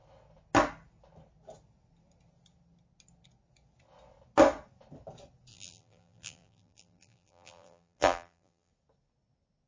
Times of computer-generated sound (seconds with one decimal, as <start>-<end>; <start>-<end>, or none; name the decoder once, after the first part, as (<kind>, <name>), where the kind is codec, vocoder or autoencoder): 5.5-8.7 (vocoder, BigVGAN v2)